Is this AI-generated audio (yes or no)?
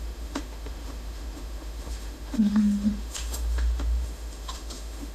yes